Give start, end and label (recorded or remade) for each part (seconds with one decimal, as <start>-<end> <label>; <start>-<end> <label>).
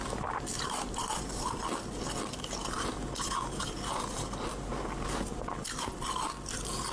0.0-0.5 recorded; 0.5-1.7 remade; 1.7-6.9 recorded